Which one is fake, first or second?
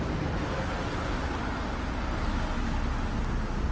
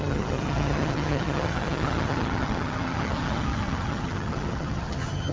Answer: second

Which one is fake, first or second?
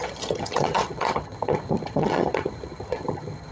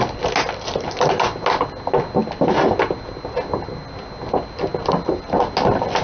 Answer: first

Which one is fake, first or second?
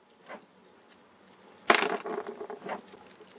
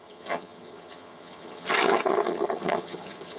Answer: second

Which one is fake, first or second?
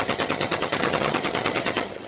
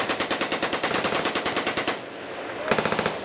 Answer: first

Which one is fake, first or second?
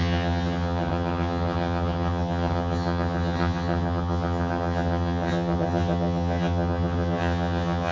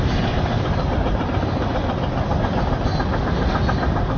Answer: first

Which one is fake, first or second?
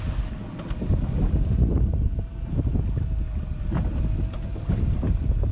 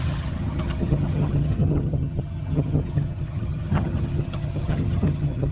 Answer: second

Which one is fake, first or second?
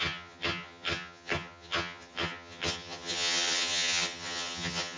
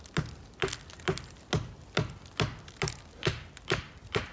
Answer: first